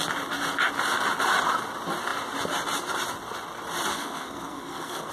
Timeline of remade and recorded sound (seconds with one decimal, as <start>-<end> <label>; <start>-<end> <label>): 0.0-3.9 recorded; 3.9-5.1 remade